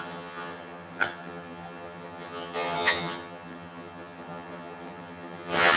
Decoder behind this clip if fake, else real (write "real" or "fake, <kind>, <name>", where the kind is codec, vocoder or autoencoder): fake, vocoder, HiFi-GAN